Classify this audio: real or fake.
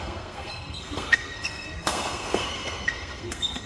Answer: fake